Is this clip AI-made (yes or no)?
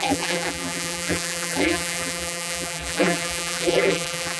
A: yes